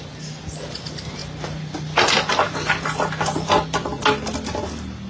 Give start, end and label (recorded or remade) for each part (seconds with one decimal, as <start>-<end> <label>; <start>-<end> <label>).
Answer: 0.0-5.1 recorded